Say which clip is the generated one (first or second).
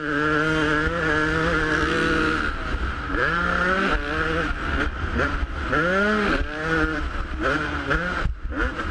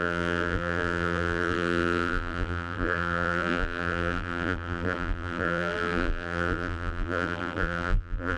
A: second